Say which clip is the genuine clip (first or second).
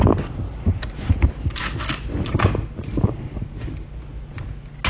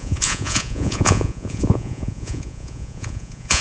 first